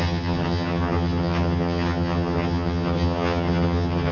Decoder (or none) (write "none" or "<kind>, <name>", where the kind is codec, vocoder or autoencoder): vocoder, HiFi-GAN